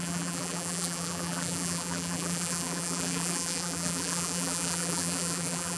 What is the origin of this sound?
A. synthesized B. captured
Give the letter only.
A